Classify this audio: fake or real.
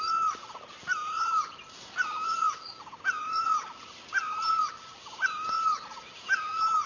real